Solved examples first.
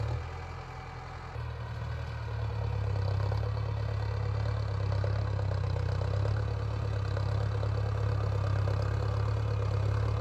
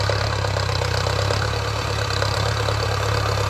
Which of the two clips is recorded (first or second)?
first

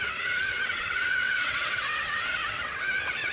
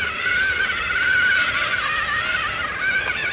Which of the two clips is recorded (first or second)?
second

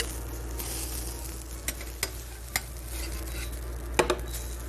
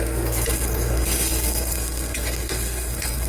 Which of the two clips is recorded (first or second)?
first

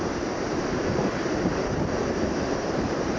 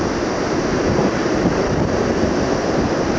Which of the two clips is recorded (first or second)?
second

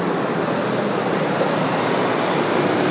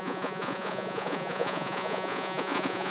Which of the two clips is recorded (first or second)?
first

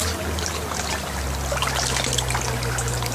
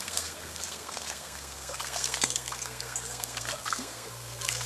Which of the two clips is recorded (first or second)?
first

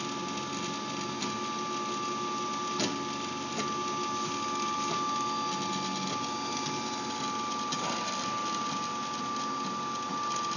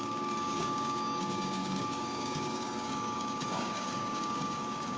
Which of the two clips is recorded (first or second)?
first